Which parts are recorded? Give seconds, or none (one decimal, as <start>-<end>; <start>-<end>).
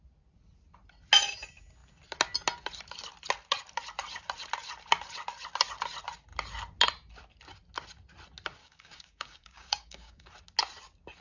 0.0-8.6; 10.3-11.2